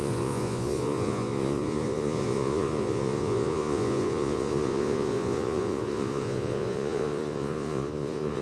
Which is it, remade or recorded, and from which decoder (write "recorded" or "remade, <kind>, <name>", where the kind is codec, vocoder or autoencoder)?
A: remade, vocoder, Vocos